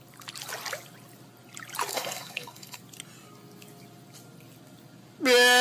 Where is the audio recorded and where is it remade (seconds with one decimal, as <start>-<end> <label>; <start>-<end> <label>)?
0.0-1.9 recorded; 1.9-2.8 remade; 2.8-5.6 recorded